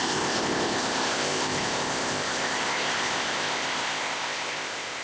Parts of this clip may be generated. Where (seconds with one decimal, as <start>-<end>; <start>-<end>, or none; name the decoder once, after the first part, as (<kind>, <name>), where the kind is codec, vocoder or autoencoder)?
0.0-5.0 (codec, ZipCodec)